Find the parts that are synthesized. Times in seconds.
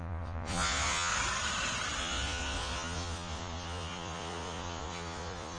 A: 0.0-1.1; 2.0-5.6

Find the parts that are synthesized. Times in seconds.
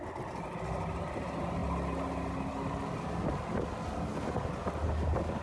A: none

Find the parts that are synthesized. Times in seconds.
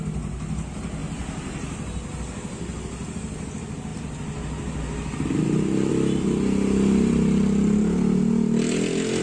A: none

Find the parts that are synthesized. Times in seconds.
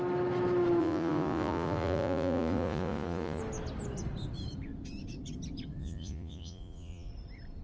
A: 0.8-3.4; 5.8-7.1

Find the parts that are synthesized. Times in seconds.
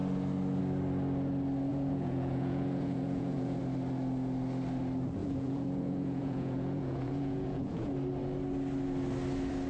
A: 1.7-3.6; 5.2-7.9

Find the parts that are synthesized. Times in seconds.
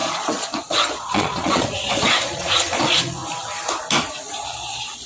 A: 0.0-3.2; 4.1-5.1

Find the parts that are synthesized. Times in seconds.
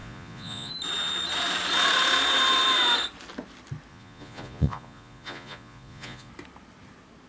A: 0.0-0.7; 3.9-6.3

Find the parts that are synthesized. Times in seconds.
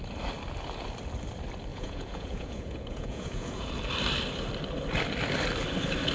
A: 1.7-3.7